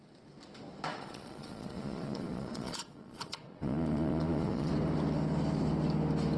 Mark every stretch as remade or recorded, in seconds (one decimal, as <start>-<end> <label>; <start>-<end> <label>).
0.0-0.9 recorded; 0.9-4.7 remade; 4.7-6.4 recorded